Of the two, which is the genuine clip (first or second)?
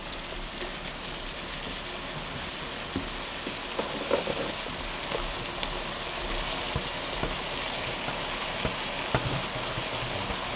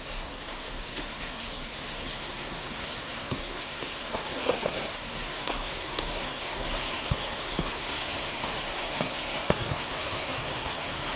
first